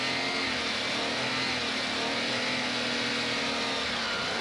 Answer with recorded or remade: recorded